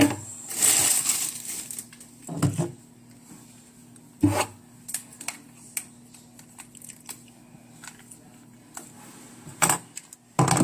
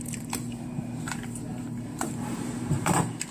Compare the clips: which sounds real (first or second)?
first